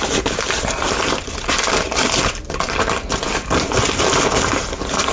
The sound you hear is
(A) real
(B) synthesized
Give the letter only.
A